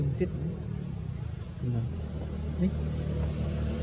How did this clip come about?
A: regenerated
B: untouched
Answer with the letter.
B